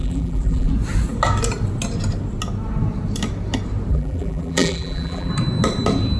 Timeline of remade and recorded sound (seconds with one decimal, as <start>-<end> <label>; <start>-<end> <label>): 0.0-0.7 remade; 0.7-3.9 recorded; 3.9-5.3 remade; 5.3-6.2 recorded